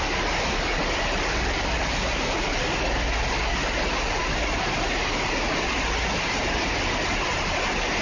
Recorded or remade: recorded